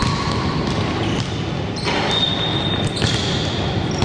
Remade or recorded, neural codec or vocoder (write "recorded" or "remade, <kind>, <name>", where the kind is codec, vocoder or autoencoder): recorded